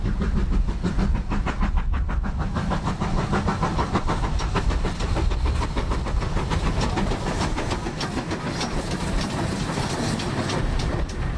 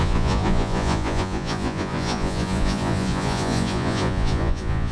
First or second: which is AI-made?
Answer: second